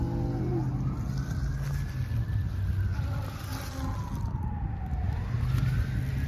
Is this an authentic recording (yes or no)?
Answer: yes